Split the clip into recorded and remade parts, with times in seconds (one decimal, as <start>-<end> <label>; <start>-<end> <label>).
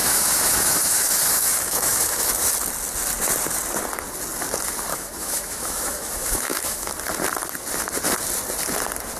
0.0-2.5 remade; 2.5-4.9 recorded; 4.9-6.9 remade; 6.9-9.2 recorded